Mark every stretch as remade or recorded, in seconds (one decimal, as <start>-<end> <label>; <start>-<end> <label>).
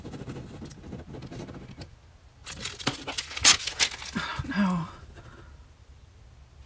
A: 0.0-6.7 recorded